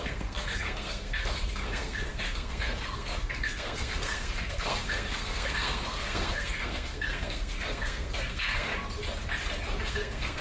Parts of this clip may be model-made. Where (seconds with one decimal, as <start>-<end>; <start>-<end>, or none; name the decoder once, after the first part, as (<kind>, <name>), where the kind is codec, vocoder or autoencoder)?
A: 0.0-8.7 (codec, SNAC); 9.8-10.4